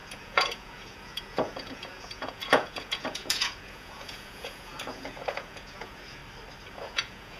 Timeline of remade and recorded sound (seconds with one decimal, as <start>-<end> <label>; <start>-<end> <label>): 0.0-6.2 remade; 6.2-6.7 recorded; 6.7-7.4 remade